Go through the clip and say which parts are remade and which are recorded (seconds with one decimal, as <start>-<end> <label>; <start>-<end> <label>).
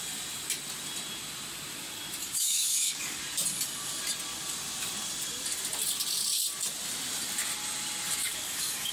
0.0-2.2 recorded; 2.2-3.2 remade; 3.2-8.2 recorded; 8.2-8.9 remade